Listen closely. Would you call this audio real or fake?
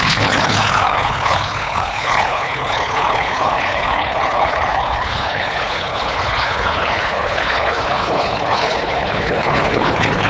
fake